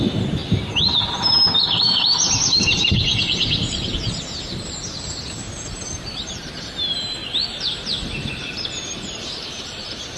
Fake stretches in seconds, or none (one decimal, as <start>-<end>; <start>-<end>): 0.0-0.4; 1.1-7.2; 9.1-10.2